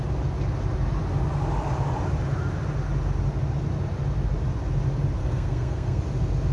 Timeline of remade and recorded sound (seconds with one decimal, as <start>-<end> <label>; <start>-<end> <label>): 0.0-5.2 recorded; 5.2-6.0 remade; 6.0-6.5 recorded